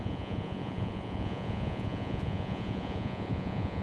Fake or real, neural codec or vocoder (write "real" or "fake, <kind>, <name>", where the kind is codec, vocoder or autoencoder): fake, vocoder, Vocos